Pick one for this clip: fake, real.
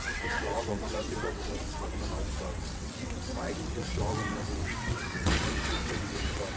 fake